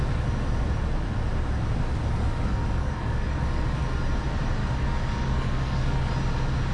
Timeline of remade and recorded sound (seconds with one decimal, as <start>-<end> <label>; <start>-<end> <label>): 0.0-2.2 recorded; 2.2-3.6 remade; 3.6-4.6 recorded; 4.6-6.1 remade; 6.1-6.7 recorded